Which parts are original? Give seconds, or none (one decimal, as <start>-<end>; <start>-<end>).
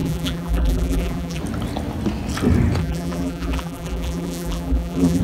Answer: 1.4-2.8